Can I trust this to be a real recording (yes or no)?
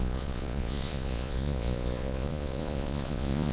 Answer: no